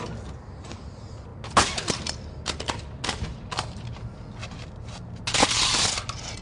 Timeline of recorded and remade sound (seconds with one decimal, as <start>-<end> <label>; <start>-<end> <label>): 0.0-4.4 recorded; 4.4-5.2 remade; 5.2-6.4 recorded